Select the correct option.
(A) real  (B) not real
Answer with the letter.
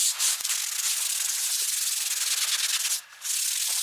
A